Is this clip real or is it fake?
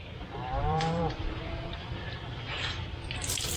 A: fake